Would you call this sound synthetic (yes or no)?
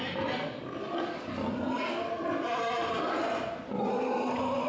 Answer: no